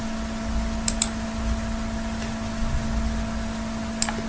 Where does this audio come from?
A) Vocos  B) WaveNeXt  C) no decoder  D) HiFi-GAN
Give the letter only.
C